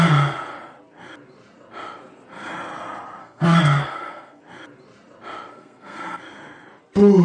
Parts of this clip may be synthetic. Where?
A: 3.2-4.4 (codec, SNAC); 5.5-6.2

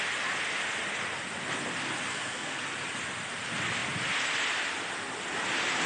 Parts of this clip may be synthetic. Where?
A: 2.1-2.6 (codec, SNAC)

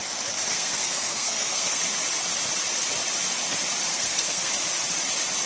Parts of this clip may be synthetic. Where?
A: 0.5-1.8 (codec, SNAC); 3.9-4.5

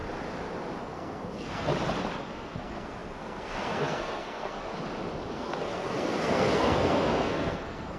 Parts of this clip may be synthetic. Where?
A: 0.8-1.7 (codec, SNAC); 2.2-4.7; 5.3-8.0

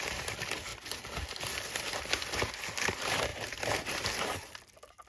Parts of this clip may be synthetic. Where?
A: none